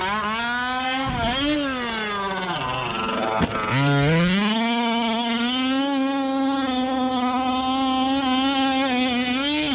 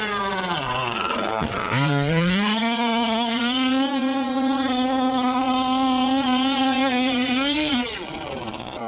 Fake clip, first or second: second